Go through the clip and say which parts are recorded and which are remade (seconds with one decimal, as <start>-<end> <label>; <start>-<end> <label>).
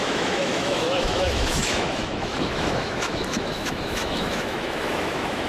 0.0-5.5 remade